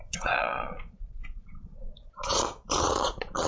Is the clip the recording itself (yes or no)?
no